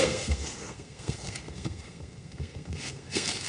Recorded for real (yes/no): no